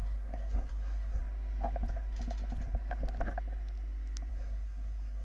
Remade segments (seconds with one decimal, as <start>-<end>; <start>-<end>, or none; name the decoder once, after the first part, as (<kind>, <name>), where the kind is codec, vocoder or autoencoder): 0.0-1.2 (codec, SNAC); 4.3-5.2